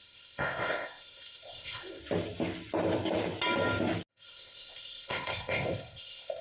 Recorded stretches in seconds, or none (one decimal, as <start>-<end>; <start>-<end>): 2.0-4.1